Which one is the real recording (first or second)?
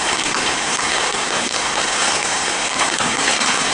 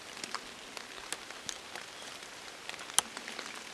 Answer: second